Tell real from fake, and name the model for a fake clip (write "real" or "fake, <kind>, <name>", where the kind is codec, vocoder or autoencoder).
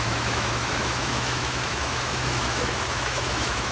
fake, autoencoder, DAC-VAE